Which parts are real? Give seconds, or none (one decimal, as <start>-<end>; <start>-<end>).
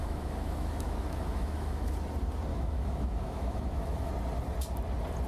1.9-2.5; 4.1-5.3